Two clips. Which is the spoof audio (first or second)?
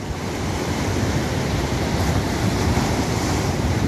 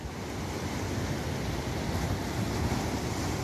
first